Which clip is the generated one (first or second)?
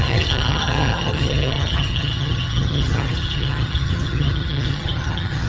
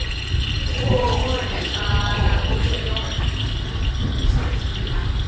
first